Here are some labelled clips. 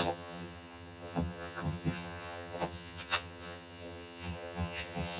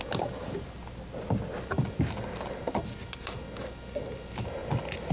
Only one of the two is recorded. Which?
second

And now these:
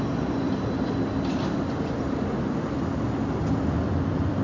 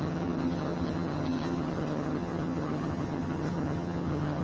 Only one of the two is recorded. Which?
first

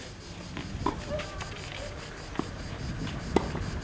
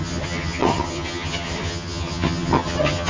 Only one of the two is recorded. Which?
first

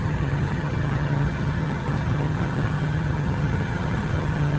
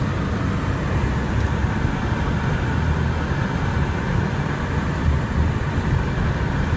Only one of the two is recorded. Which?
second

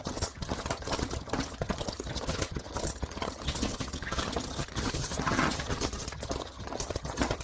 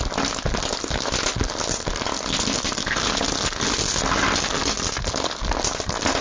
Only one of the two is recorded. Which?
second